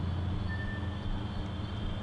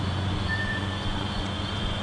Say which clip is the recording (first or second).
first